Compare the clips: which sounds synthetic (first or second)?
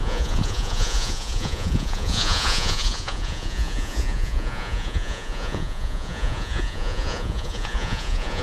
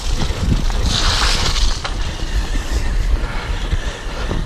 first